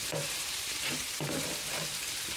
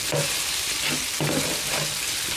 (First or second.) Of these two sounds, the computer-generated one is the first